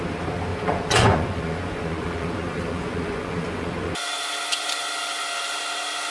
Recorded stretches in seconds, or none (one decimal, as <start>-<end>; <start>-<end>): 0.0-0.5; 3.9-6.1